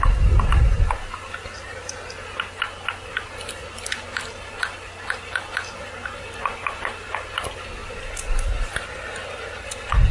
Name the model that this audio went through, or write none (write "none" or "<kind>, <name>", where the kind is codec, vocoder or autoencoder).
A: none